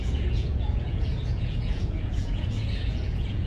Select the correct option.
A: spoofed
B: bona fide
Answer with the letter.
A